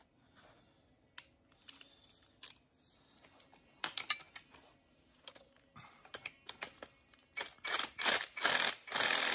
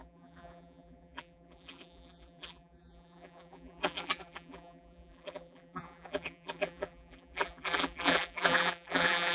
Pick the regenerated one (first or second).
second